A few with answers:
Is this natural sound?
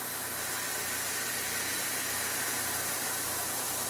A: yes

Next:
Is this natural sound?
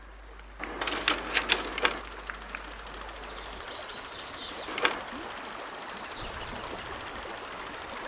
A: yes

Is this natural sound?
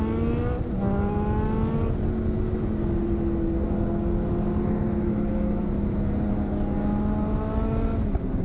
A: yes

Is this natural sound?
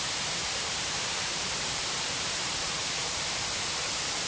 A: no